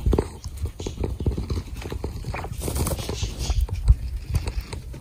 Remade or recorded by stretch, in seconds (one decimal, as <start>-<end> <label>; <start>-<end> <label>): 0.0-5.0 recorded